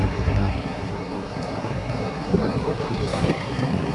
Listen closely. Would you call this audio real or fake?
fake